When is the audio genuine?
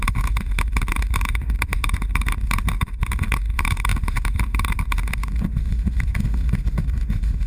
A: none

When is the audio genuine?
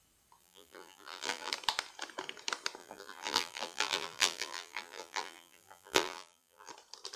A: 0.0-0.4; 1.5-2.8; 6.7-7.2